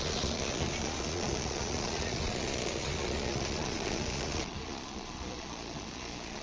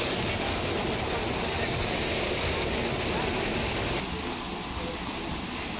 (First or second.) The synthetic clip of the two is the first